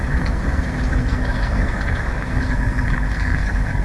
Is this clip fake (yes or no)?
yes